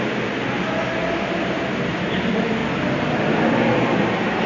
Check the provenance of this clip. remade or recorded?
recorded